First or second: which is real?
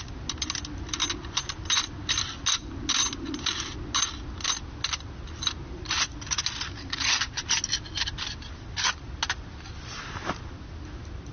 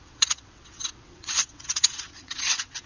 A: first